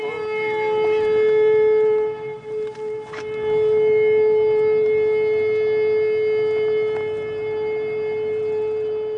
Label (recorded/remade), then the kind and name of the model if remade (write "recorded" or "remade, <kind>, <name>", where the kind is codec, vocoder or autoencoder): remade, vocoder, BigVGAN v2